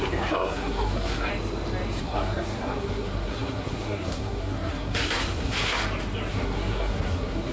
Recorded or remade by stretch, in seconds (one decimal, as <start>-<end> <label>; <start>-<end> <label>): 0.0-1.3 remade; 1.3-2.0 recorded; 2.0-5.8 remade; 5.8-6.3 recorded; 6.3-7.5 remade